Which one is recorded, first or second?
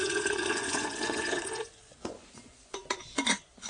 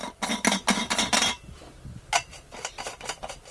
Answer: second